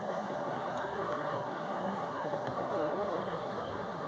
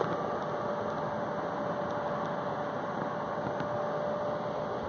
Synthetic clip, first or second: first